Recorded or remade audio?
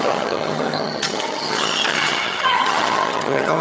remade